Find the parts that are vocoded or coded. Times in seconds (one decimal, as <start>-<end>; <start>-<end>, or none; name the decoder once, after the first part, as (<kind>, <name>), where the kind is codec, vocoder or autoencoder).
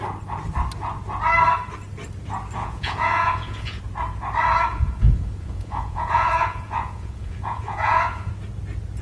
2.6-3.8 (vocoder, Vocos); 4.7-8.3